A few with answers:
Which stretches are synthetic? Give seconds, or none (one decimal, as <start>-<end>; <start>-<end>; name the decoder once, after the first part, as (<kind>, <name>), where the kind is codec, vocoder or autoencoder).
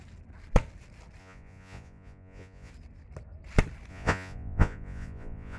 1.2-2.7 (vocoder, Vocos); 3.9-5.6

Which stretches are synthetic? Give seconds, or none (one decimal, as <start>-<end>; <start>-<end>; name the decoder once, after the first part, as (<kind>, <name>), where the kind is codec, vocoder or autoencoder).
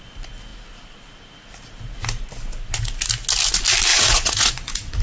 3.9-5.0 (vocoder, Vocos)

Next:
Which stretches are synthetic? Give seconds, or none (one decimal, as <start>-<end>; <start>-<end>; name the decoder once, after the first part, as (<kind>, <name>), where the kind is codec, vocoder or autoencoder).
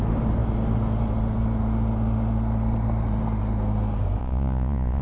4.2-5.0 (vocoder, Vocos)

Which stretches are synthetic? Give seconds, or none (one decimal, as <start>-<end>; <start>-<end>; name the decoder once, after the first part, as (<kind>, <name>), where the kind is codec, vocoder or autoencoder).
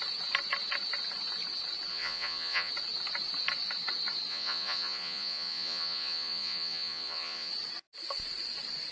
1.9-2.7 (vocoder, Vocos); 4.3-7.5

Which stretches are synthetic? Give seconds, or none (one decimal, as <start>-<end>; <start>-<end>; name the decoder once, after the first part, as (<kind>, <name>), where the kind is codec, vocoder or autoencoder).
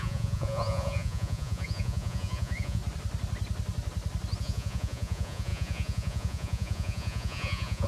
0.0-2.8 (vocoder, Vocos); 4.4-7.9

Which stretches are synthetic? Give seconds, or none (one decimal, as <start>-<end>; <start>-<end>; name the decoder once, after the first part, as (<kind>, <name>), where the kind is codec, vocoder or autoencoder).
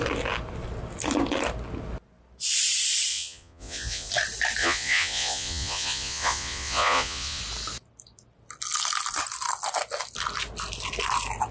3.1-4.1 (vocoder, Vocos); 4.6-7.4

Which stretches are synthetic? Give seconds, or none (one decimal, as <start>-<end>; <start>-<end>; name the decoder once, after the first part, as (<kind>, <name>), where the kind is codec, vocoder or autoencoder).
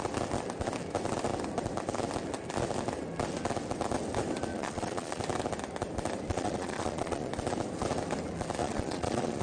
4.5-5.2 (vocoder, Vocos); 6.3-7.3; 8.6-9.4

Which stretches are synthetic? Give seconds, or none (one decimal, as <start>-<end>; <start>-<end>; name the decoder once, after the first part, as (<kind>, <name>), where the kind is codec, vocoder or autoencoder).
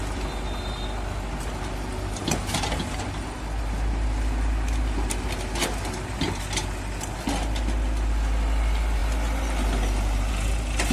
none